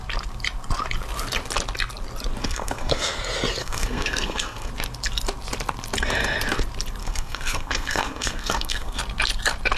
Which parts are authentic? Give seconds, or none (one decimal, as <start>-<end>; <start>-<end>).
0.0-2.4; 3.2-3.6; 4.7-7.0; 9.0-9.8